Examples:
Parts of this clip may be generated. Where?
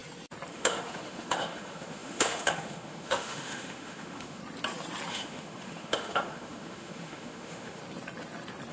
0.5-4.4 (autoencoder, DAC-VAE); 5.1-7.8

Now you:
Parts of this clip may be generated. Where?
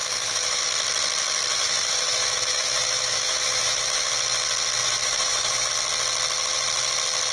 0.0-0.6 (autoencoder, DAC-VAE); 1.5-4.1; 4.8-5.7